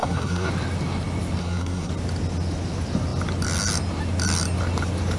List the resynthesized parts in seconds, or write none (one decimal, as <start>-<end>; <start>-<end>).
0.0-0.5; 1.4-1.9